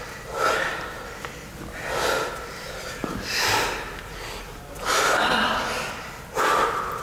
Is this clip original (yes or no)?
yes